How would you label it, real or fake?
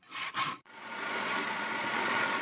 fake